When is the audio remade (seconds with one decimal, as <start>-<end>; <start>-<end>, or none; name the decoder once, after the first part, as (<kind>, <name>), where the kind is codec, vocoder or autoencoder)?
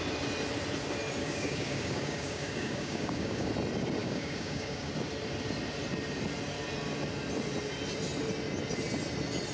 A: 1.2-3.5 (codec, DAC); 4.0-4.9